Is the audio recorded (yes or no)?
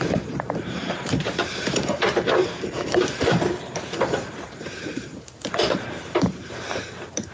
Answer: no